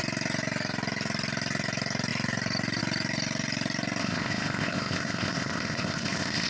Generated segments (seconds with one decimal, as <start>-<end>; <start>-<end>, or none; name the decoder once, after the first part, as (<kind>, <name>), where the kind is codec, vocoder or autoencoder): 4.0-6.5 (codec, ZipCodec)